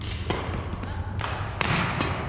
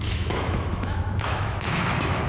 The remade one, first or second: second